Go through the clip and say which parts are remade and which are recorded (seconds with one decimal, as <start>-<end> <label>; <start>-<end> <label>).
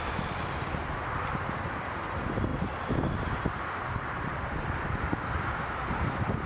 0.0-6.5 remade